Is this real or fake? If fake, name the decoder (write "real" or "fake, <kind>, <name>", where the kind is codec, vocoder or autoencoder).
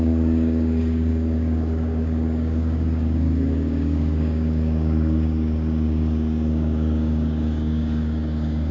fake, codec, DAC